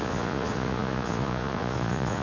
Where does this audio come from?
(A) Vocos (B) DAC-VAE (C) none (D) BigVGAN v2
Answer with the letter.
A